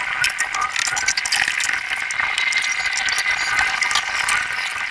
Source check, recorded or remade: recorded